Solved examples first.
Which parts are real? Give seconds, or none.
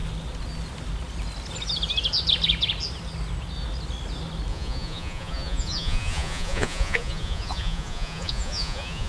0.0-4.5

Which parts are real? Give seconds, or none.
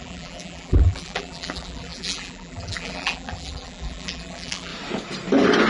4.7-5.7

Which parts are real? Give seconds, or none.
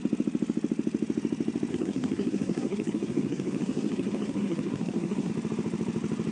0.0-1.7; 5.3-6.3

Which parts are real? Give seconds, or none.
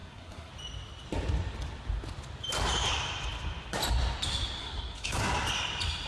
0.5-4.6; 5.2-6.1